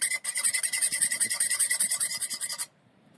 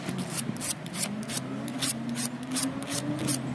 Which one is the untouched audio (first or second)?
second